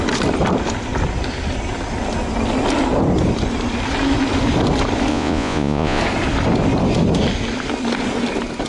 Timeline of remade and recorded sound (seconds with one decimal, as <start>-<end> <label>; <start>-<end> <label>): 0.0-5.1 recorded; 5.1-6.0 remade; 6.0-8.7 recorded